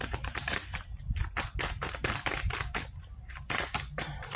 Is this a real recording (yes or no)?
no